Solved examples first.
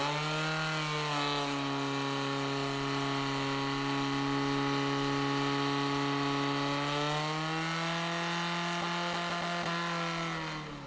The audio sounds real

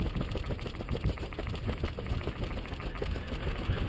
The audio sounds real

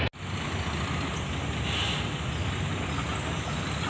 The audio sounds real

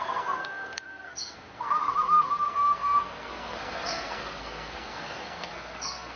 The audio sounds fake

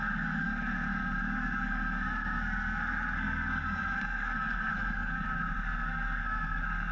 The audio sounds fake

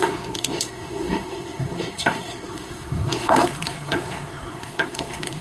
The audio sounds fake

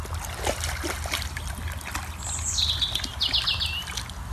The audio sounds real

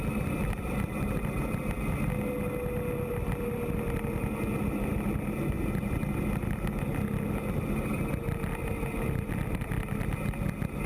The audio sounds real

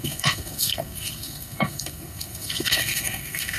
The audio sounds fake